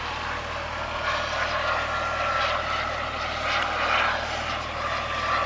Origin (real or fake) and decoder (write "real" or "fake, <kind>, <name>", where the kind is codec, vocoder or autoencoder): real